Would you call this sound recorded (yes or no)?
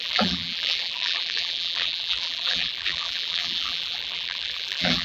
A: no